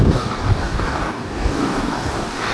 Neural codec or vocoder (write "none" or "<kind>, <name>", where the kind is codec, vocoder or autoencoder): codec, DAC